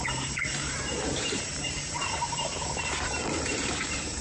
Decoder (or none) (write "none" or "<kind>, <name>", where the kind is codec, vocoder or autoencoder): vocoder, BigVGAN v2